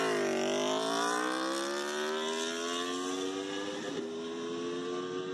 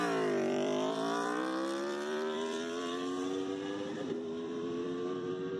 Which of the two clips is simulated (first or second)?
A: second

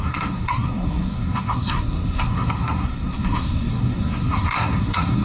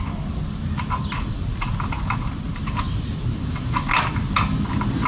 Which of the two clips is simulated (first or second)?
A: first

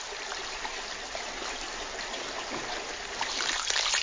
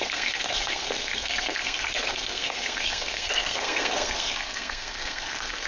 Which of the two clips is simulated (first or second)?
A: second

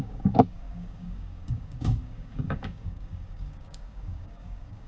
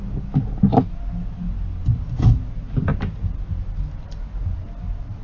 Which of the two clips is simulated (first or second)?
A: first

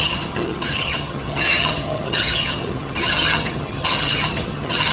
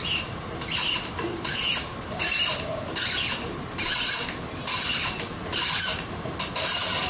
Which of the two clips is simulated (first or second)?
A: first